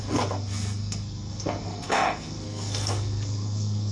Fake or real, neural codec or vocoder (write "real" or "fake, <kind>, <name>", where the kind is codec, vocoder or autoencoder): fake, codec, SNAC